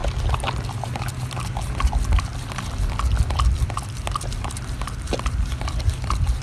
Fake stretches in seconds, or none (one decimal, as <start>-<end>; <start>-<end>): none